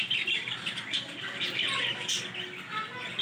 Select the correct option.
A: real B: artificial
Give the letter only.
A